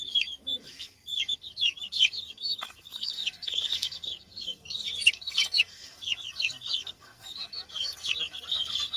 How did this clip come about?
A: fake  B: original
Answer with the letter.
A